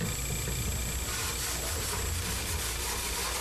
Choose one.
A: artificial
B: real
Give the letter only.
B